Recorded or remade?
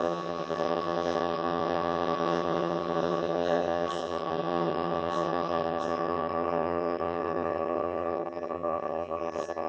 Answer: remade